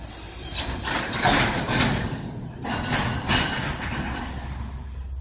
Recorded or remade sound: recorded